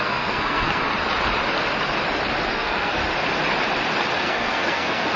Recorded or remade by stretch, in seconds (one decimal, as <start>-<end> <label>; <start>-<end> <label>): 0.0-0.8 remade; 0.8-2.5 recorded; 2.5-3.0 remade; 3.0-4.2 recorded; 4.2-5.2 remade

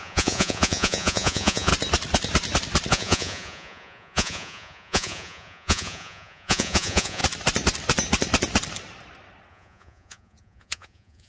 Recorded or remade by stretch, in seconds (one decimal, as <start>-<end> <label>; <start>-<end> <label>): 0.0-1.7 remade; 1.7-2.9 recorded; 2.9-7.2 remade; 7.2-9.5 recorded; 9.5-11.3 remade

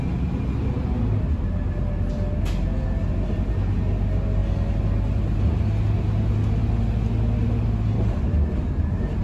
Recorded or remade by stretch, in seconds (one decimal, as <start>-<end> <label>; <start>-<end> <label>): 0.0-9.2 recorded

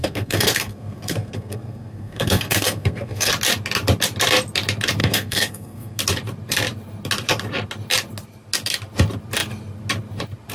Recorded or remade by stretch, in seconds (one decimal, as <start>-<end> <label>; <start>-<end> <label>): 0.0-3.3 remade; 3.3-5.0 recorded; 5.0-6.0 remade; 6.0-10.5 recorded

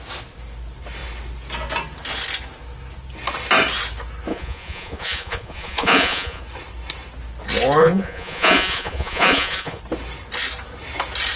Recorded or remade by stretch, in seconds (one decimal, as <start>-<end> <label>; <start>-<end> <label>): 0.0-4.3 recorded; 4.3-6.4 remade; 6.4-7.8 recorded; 7.8-9.8 remade; 9.8-11.4 recorded